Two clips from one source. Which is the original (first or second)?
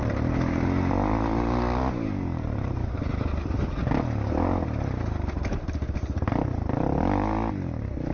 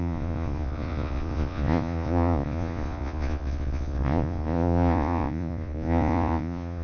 first